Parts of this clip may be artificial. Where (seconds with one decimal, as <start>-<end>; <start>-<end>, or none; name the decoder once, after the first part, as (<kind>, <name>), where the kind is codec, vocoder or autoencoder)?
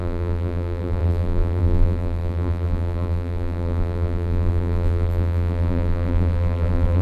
0.0-7.0 (vocoder, BigVGAN v2)